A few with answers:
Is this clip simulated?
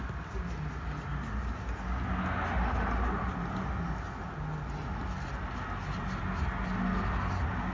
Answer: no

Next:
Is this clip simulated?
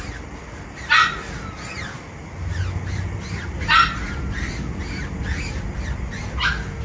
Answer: no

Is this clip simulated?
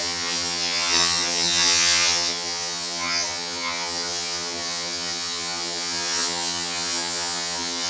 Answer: yes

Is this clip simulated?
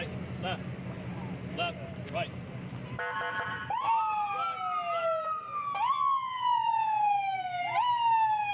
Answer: no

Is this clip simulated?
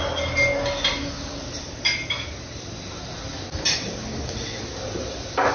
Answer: no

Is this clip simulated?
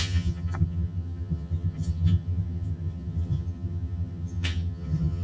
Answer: yes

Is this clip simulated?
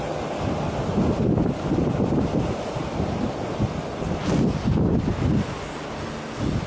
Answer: no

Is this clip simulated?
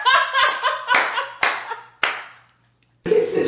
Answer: no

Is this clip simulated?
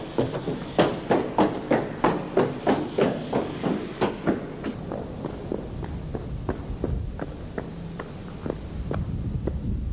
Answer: no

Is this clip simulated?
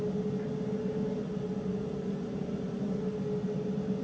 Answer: no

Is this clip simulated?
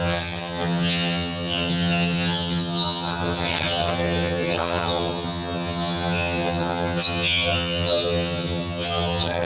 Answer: yes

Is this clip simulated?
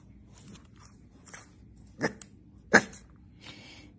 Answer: no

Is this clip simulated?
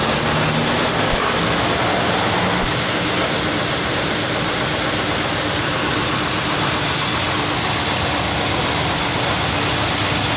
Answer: no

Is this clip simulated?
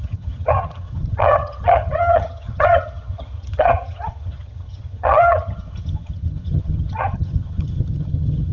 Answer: yes